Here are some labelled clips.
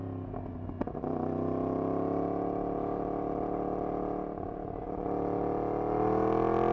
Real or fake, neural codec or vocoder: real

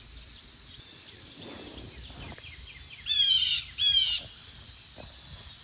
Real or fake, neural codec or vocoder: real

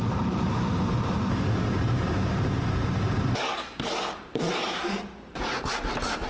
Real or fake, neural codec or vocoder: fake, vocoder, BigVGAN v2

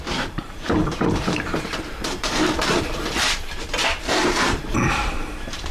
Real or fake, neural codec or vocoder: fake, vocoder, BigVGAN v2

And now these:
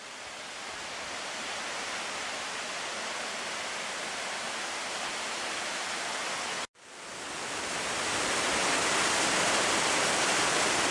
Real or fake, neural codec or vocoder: real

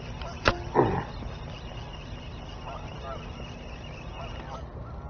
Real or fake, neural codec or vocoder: real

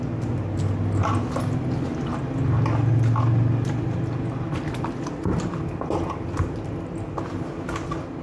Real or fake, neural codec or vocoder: real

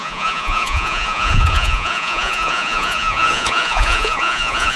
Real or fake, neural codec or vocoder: fake, vocoder, Vocos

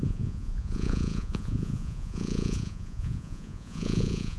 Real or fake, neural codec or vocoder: fake, vocoder, Vocos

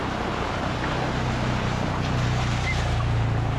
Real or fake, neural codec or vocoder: real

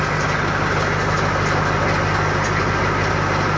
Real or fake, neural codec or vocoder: real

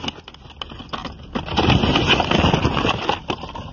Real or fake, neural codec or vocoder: real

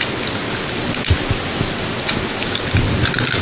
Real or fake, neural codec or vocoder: real